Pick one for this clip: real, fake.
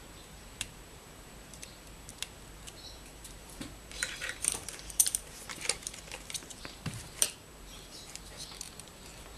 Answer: fake